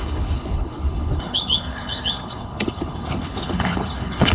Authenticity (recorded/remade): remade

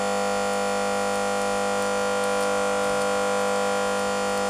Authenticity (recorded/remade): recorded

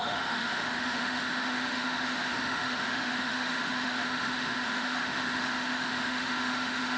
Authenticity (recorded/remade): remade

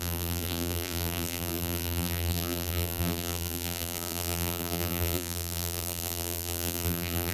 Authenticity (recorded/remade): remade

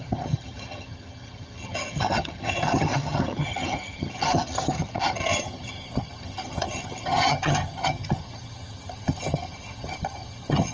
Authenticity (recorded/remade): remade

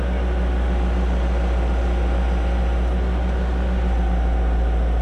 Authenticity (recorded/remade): recorded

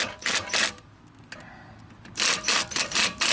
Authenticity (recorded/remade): recorded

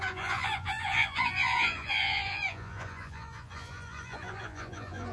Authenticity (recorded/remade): remade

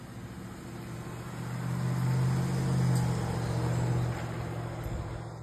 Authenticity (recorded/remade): recorded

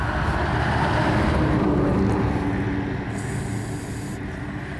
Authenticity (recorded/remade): recorded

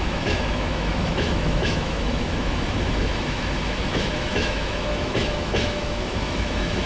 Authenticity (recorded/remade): remade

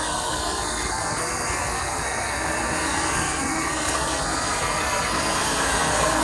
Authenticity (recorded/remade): remade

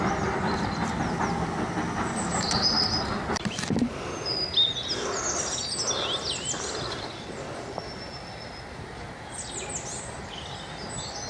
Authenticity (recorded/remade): recorded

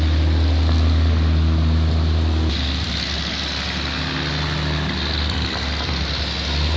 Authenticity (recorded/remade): recorded